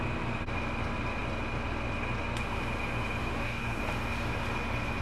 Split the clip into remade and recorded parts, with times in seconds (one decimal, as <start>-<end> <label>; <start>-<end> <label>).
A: 0.0-3.2 recorded; 3.2-3.8 remade; 3.8-5.0 recorded